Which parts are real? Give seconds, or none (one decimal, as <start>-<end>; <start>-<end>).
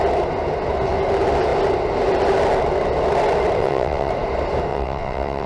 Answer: 0.0-3.6; 4.1-4.7